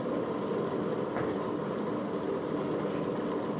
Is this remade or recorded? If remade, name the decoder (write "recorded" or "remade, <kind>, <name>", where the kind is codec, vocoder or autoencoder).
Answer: recorded